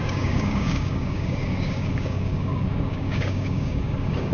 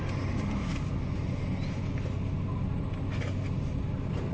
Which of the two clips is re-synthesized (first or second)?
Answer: first